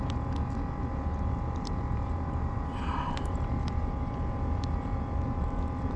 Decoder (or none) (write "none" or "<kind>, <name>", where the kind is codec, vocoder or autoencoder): vocoder, BigVGAN v2